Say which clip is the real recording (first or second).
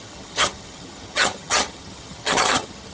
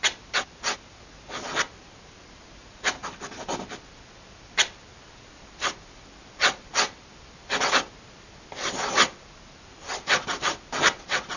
second